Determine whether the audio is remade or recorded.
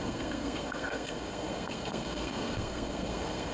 remade